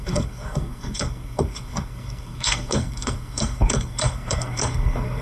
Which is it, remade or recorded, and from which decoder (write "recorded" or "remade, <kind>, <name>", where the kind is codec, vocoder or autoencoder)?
remade, codec, SNAC